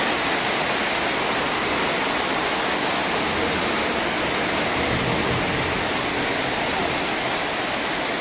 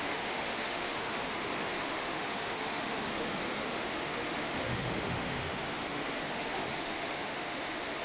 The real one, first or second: first